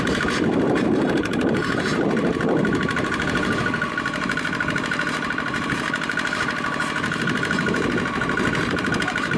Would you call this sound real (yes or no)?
no